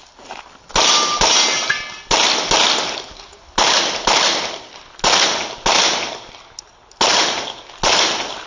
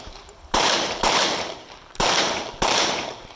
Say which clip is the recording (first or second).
first